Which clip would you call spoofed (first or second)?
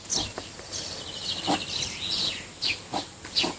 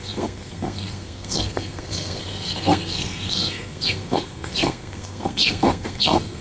second